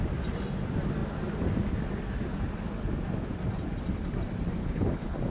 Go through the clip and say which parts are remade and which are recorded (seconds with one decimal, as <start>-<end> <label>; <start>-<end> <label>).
0.0-4.6 recorded; 4.6-5.3 remade